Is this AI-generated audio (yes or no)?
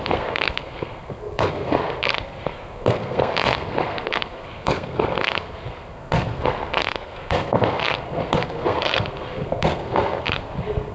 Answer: yes